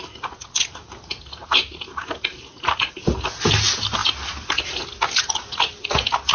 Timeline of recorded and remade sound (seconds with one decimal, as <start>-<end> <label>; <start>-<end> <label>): 0.0-6.3 recorded